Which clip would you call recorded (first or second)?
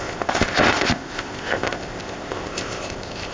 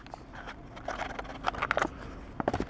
second